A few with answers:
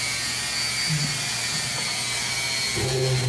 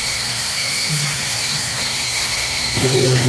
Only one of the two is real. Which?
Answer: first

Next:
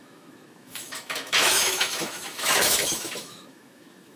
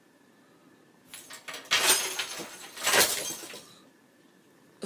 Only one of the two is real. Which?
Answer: second